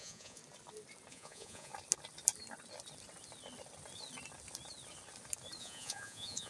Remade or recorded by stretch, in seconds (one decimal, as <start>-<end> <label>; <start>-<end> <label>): 0.0-0.4 remade; 0.4-1.1 recorded; 1.1-1.7 remade; 1.7-5.6 recorded; 5.6-6.5 remade